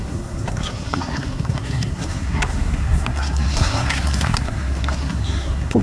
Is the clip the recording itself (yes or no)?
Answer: no